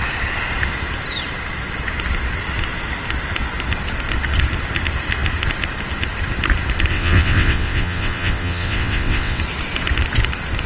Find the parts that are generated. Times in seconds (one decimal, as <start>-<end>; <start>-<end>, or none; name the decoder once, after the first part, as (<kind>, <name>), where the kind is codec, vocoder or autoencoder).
6.9-9.4 (vocoder, WaveNeXt)